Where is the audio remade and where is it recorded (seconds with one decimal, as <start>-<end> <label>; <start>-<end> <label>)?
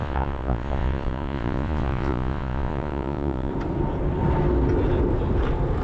0.0-3.5 remade; 3.5-5.8 recorded